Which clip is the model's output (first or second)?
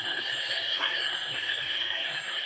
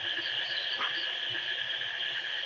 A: first